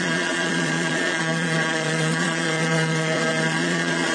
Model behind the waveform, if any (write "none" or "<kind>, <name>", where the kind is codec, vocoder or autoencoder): vocoder, Vocos